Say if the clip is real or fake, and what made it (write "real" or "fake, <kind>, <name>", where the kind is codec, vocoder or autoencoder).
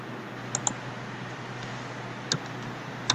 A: real